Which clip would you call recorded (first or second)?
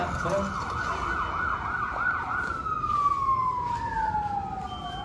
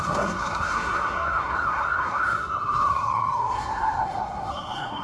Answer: first